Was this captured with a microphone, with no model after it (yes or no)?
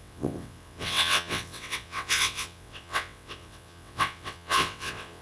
no